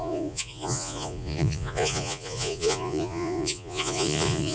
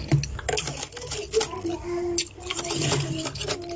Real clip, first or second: second